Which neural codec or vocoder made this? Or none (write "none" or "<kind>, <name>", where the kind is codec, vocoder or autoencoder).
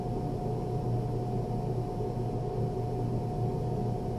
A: none